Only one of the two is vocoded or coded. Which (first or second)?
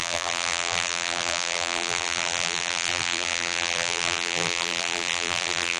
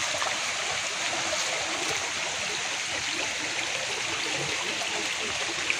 first